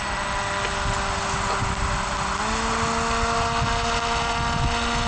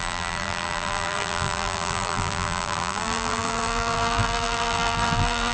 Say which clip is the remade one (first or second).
second